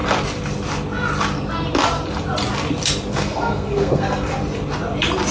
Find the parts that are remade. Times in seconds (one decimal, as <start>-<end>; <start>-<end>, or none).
3.1-4.3